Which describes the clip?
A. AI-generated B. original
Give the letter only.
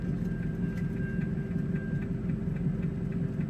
B